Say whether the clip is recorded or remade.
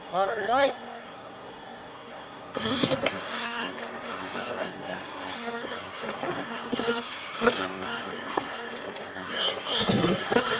remade